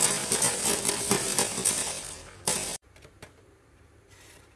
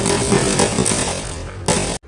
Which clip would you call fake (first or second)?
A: first